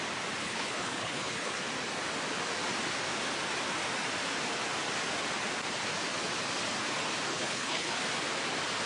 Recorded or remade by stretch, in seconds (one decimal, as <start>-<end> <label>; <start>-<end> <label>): 0.0-0.4 recorded; 0.4-1.6 remade; 1.6-7.3 recorded; 7.3-8.0 remade; 8.0-8.9 recorded